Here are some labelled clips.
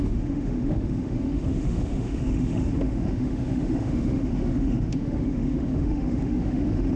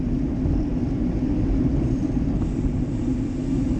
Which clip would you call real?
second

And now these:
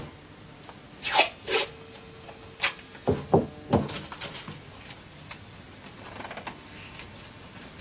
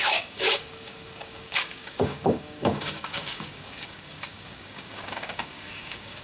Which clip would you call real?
first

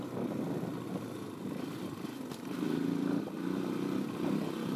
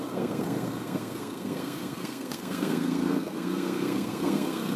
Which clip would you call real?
first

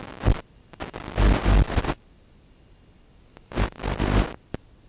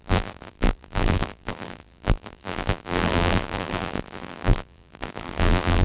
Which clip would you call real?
first